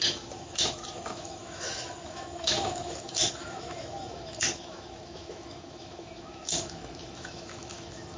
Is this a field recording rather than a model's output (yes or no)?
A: no